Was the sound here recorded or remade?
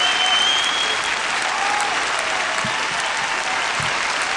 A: recorded